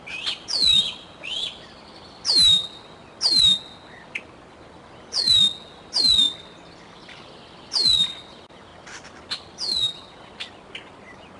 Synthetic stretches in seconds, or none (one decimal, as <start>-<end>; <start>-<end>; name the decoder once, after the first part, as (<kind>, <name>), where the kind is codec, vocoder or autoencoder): none